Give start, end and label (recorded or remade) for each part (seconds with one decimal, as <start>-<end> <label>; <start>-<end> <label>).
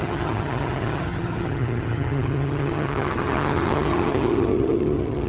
0.0-5.3 remade